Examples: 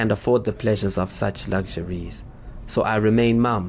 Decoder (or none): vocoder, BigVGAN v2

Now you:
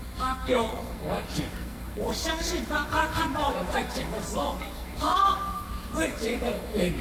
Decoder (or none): codec, SNAC